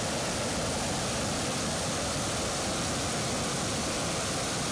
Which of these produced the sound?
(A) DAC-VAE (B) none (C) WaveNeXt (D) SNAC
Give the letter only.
B